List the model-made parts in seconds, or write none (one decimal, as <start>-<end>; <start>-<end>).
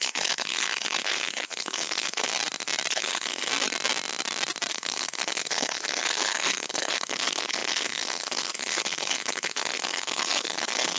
0.0-2.3; 2.9-3.5; 4.7-11.0